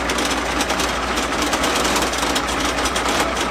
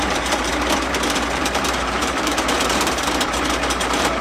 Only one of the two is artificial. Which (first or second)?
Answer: second